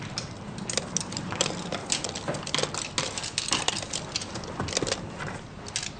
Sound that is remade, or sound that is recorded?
recorded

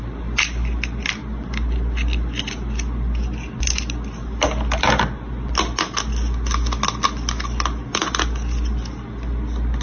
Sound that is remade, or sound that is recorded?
recorded